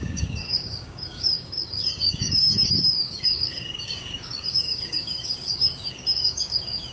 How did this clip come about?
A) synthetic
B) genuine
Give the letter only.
A